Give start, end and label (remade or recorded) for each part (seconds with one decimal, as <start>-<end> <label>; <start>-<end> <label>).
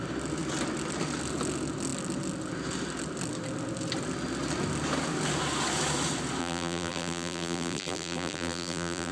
0.0-6.4 recorded; 6.4-9.1 remade